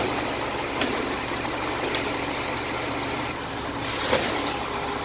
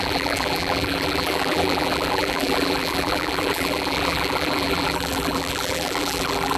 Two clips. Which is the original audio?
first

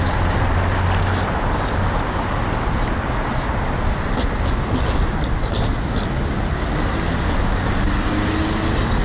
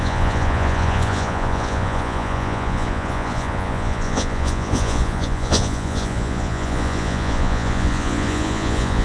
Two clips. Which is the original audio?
first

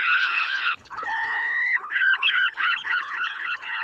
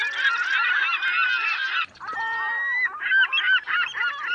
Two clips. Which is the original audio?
second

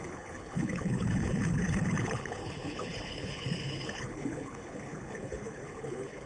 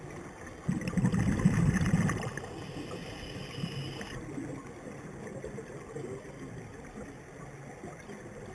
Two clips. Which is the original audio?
second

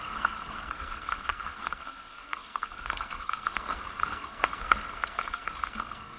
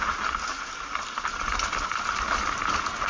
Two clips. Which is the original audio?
second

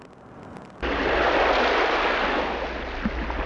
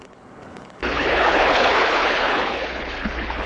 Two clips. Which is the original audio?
first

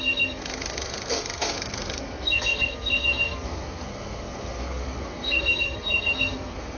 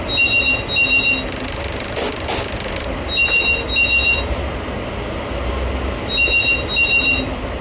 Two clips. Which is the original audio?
second